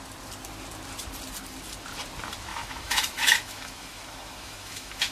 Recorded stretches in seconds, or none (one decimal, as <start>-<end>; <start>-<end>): 0.0-2.5